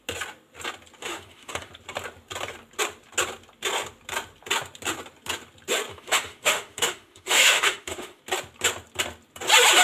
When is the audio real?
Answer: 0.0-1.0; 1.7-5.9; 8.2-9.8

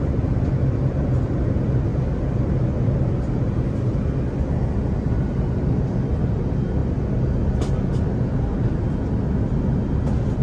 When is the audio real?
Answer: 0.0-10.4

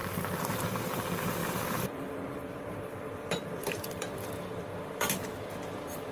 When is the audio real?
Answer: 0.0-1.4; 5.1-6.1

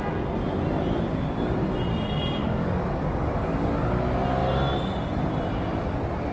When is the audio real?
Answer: 0.0-2.4; 3.9-6.3

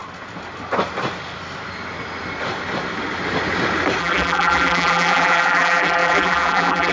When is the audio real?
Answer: 0.0-4.0

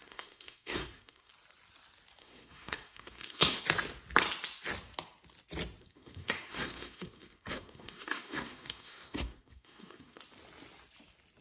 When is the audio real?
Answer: 1.3-2.2; 3.6-5.8; 10.2-11.4

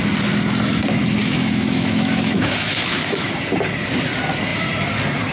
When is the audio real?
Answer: 0.0-1.2; 3.3-5.3

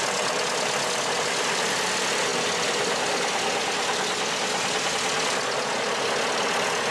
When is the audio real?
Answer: 0.0-6.9